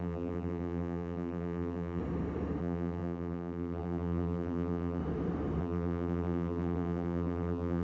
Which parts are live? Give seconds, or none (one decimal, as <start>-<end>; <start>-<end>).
2.0-2.6; 5.0-5.6